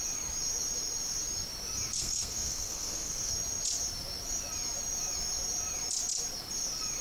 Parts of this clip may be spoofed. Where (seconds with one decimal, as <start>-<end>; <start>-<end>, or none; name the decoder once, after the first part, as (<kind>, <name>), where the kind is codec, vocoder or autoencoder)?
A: 1.9-3.3 (codec, SNAC)